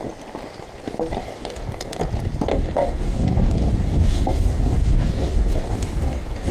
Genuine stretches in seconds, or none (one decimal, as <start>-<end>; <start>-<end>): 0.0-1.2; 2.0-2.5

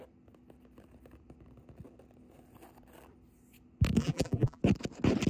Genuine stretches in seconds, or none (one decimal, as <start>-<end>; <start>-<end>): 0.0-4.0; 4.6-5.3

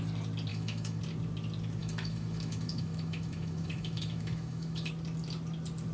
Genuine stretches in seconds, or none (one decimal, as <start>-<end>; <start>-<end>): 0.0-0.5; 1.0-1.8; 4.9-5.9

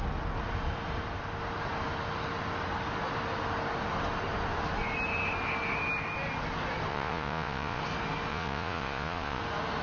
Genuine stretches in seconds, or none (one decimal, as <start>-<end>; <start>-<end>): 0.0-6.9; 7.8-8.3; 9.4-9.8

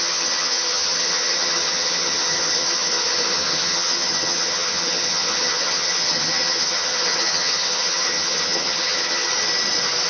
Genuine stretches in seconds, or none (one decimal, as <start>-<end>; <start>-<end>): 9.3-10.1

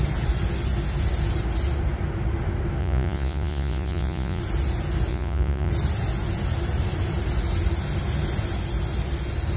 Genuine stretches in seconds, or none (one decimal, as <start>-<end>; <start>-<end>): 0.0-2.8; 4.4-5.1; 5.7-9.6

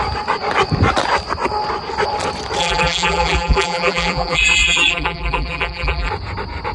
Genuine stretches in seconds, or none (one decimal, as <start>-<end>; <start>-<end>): 0.0-2.6; 6.1-6.7

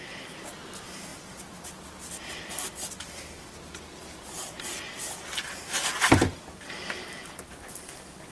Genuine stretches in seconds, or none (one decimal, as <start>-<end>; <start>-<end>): 0.0-1.1; 1.6-8.3